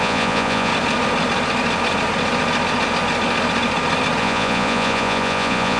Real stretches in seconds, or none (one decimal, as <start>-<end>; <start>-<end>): 0.7-4.2